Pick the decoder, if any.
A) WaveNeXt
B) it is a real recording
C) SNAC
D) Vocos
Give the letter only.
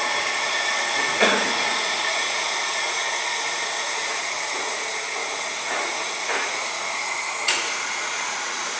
D